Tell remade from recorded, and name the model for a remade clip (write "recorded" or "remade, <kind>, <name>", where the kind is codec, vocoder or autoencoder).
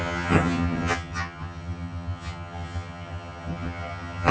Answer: remade, vocoder, HiFi-GAN